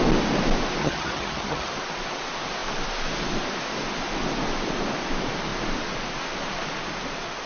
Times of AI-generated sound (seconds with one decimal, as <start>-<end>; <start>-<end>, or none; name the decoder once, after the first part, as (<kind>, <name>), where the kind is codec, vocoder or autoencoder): 0.8-1.7 (vocoder, HiFi-GAN)

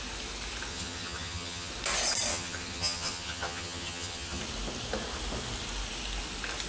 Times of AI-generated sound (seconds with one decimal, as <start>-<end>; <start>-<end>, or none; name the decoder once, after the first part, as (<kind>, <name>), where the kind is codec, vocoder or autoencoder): 0.7-1.7 (vocoder, HiFi-GAN); 2.3-4.4

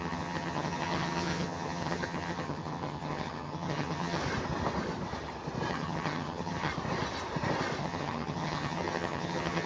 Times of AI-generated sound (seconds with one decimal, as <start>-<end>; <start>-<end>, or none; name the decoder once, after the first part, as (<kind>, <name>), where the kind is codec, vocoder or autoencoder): 0.0-4.2 (vocoder, HiFi-GAN); 5.7-6.7; 7.8-9.7

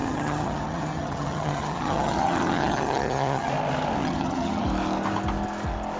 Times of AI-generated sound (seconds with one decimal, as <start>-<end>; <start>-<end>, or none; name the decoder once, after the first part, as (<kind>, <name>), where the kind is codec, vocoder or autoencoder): 0.0-3.5 (vocoder, HiFi-GAN); 4.0-4.6